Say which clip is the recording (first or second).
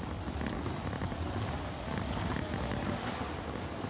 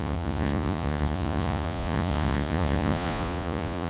first